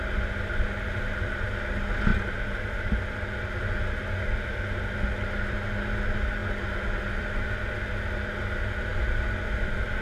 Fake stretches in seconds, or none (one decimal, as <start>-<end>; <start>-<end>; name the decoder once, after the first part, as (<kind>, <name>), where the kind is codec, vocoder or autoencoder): none